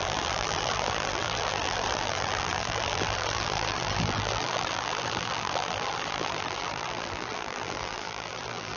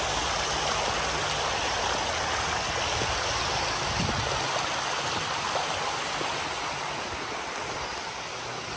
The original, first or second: second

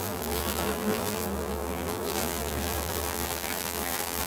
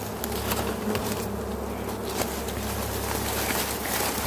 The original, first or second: second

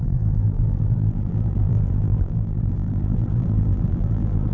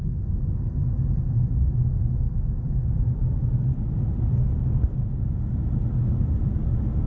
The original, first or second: second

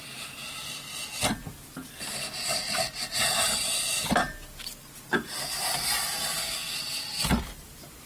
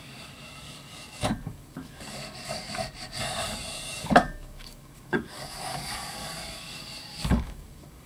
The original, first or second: first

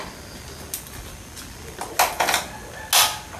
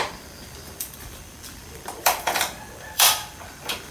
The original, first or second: first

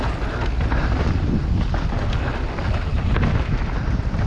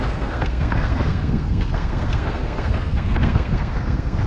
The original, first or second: first